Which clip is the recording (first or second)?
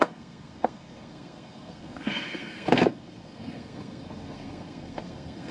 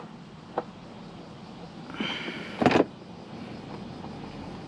second